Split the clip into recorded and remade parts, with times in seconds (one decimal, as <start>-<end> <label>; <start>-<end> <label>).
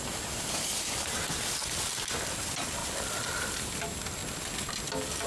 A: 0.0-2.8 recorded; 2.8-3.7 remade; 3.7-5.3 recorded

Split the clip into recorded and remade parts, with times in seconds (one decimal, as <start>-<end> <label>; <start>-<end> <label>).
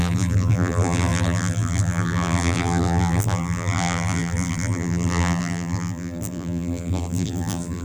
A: 0.0-7.8 remade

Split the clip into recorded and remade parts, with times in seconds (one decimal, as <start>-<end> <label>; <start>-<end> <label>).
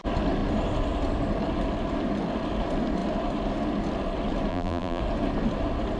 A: 0.0-4.5 recorded; 4.5-5.0 remade; 5.0-6.0 recorded